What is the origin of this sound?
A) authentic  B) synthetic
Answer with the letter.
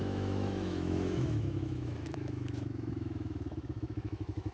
B